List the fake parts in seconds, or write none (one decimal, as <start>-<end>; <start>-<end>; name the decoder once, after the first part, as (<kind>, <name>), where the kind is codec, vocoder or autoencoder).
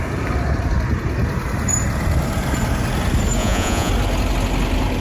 3.4-3.9 (vocoder, Vocos)